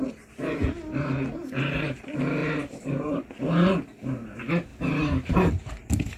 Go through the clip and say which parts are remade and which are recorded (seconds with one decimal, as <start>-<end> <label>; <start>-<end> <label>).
0.0-0.6 recorded; 0.6-2.0 remade; 2.0-2.4 recorded; 2.4-3.1 remade; 3.1-4.7 recorded; 4.7-5.5 remade; 5.5-6.2 recorded

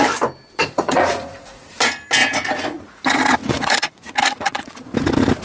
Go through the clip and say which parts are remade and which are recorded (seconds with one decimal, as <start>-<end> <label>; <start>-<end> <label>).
0.0-0.6 recorded; 0.6-1.8 remade; 1.8-2.2 recorded; 2.2-3.0 remade; 3.0-3.4 recorded; 3.4-4.8 remade; 4.8-5.4 recorded

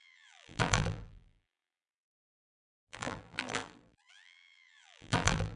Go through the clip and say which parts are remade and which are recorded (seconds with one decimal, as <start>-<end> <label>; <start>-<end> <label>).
0.0-5.6 remade

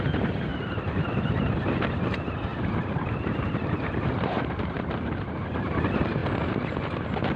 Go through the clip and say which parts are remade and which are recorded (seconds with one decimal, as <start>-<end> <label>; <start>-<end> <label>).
0.0-0.5 recorded; 0.5-1.1 remade; 1.1-2.5 recorded; 2.5-5.4 remade; 5.4-7.4 recorded

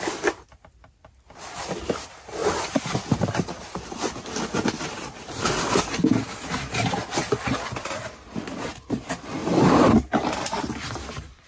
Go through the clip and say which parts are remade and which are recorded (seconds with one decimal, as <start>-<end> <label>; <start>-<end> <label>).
0.0-11.5 recorded

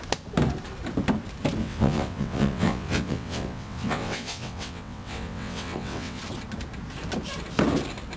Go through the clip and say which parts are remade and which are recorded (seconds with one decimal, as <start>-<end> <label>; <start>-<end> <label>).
0.0-1.6 recorded; 1.6-6.2 remade; 6.2-8.2 recorded